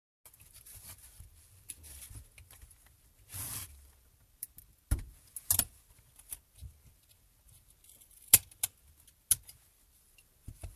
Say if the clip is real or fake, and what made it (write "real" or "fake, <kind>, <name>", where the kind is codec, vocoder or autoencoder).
real